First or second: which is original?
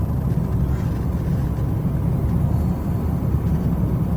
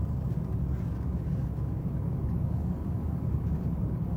first